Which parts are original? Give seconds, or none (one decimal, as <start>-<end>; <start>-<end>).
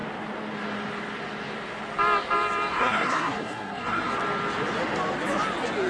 0.0-2.7; 4.1-5.9